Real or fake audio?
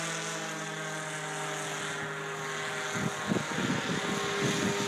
real